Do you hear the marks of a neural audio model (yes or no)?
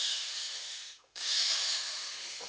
yes